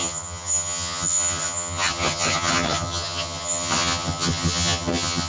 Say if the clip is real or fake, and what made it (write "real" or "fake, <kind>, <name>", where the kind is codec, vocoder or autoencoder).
fake, vocoder, HiFi-GAN